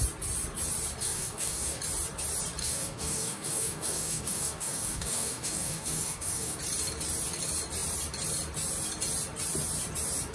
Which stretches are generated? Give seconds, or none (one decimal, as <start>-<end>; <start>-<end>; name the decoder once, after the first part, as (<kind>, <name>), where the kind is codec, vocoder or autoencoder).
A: 1.0-1.8 (codec, DAC); 2.6-6.6